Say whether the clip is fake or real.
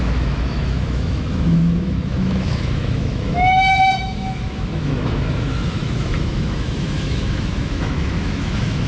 fake